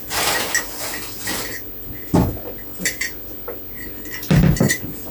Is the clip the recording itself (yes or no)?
yes